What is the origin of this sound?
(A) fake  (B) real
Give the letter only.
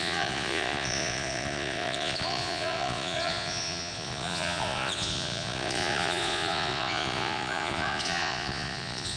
A